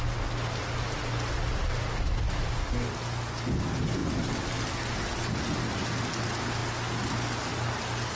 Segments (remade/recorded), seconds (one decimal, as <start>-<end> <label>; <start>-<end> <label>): 0.0-8.2 recorded